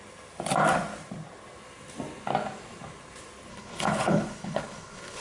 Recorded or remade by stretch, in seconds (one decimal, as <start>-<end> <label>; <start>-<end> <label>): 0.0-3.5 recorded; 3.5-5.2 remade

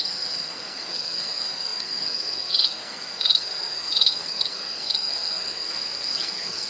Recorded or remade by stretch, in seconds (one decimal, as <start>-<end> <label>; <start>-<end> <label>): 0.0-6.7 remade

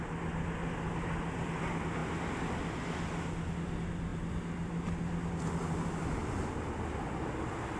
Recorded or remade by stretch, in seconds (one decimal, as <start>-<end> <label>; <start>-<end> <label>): 0.0-7.8 recorded

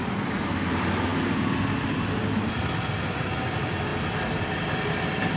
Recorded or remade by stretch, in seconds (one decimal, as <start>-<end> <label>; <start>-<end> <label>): 0.0-5.4 recorded

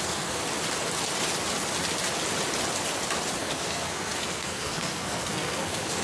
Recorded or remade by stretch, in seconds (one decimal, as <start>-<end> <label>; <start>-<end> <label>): 0.0-0.4 remade; 0.4-3.4 recorded; 3.4-6.0 remade

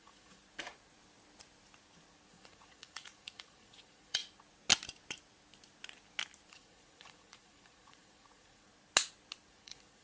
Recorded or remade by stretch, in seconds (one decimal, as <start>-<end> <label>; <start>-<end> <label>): 0.0-0.4 remade; 0.4-2.3 recorded; 2.3-4.2 remade; 4.2-6.5 recorded; 6.5-8.7 remade; 8.7-9.5 recorded; 9.5-10.0 remade

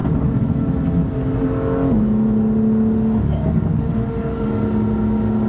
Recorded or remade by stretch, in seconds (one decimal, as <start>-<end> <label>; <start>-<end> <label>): 0.0-3.7 recorded; 3.7-4.6 remade; 4.6-5.5 recorded

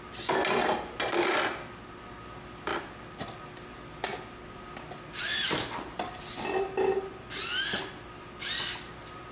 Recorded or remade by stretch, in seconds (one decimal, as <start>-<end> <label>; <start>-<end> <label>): 0.0-9.3 recorded